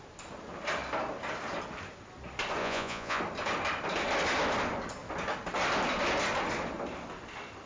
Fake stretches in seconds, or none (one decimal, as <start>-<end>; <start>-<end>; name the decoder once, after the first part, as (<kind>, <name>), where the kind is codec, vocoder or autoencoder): 2.6-3.2 (vocoder, Vocos)